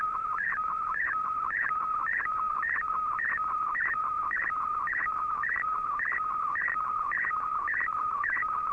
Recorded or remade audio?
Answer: remade